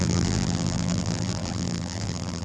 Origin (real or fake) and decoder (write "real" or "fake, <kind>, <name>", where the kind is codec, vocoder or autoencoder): fake, vocoder, BigVGAN v2